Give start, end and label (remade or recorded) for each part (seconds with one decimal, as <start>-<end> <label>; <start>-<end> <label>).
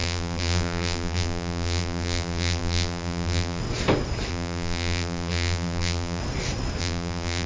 0.0-3.6 remade; 3.6-4.3 recorded; 4.3-6.2 remade; 6.2-6.8 recorded; 6.8-7.5 remade